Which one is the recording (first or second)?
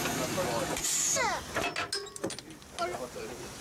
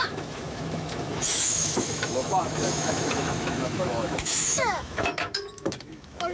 first